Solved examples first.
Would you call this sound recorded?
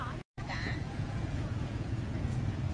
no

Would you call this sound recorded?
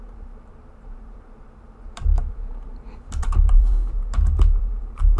no